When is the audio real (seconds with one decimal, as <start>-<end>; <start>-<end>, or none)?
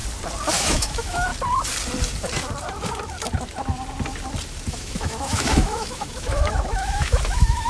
0.0-0.6; 1.3-4.7